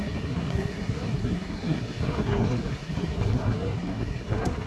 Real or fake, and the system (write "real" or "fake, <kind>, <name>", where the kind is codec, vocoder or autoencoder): fake, codec, SNAC